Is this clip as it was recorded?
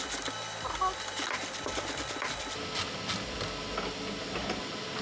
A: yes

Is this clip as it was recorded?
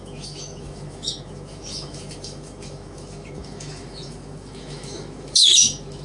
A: no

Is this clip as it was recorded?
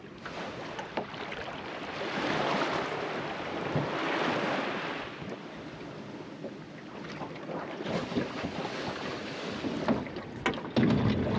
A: yes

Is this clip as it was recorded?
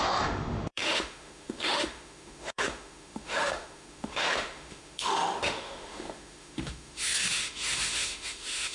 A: no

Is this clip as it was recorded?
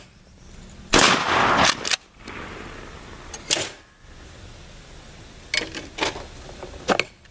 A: yes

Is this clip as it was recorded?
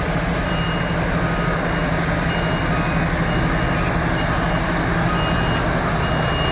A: yes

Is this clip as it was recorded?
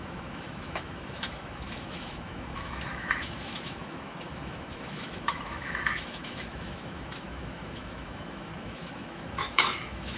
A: no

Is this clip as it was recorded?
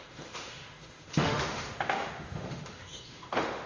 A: no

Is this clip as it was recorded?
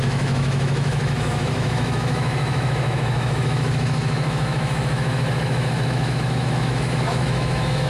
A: no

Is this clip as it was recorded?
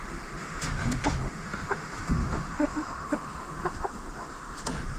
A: no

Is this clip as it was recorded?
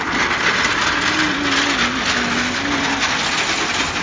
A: yes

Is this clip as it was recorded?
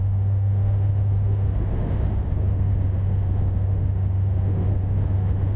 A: no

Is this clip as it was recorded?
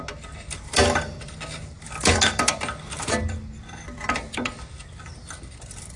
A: yes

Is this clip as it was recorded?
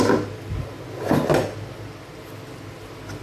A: yes